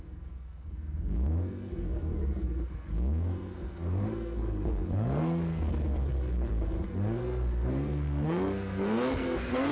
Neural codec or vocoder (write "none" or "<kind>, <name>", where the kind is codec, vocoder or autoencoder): codec, SNAC